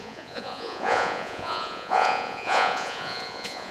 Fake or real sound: fake